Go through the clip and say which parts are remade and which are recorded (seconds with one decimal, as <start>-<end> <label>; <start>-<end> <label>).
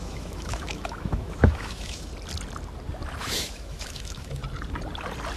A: 0.0-2.1 remade; 2.1-3.2 recorded; 3.2-4.4 remade; 4.4-5.4 recorded